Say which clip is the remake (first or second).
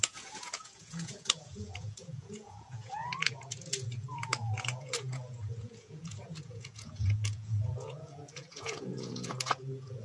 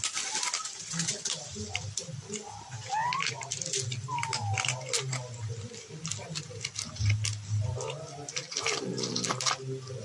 first